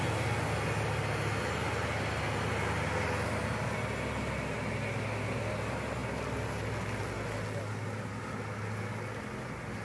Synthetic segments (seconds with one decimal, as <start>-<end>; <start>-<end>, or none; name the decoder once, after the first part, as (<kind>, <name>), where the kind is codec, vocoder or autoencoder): none